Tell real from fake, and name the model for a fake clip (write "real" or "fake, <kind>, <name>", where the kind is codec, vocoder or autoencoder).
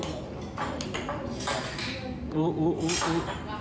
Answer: real